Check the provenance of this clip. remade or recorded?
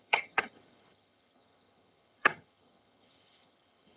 remade